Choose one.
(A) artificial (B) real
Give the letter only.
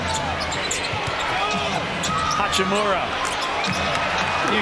B